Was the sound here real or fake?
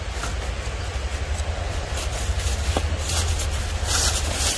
real